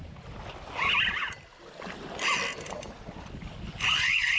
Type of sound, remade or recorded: recorded